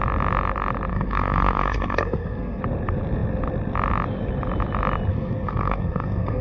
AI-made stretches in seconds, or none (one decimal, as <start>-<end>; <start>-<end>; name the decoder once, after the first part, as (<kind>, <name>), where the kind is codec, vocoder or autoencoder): 0.9-2.6 (codec, SNAC); 5.1-6.4

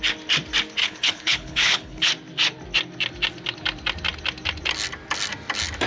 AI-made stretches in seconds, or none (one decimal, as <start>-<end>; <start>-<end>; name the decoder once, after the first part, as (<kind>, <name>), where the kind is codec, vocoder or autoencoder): 0.8-2.1 (codec, HILCodec)